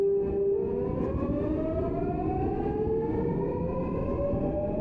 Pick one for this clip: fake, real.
real